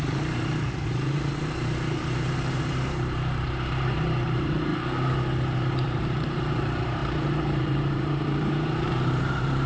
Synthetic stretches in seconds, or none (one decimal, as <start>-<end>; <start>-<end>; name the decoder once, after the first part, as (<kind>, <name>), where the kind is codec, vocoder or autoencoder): 0.0-4.7 (vocoder, BigVGAN v2); 5.7-9.7